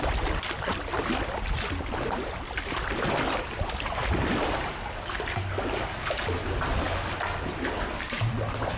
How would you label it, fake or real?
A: real